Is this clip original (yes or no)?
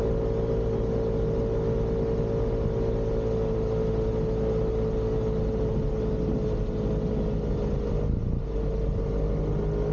yes